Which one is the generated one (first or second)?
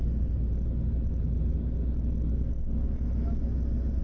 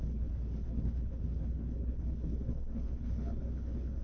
second